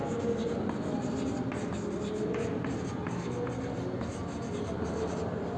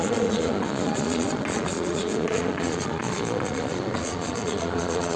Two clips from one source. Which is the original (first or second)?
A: first